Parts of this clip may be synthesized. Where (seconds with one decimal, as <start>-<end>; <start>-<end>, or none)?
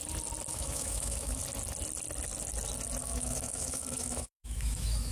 0.5-1.4; 3.0-5.1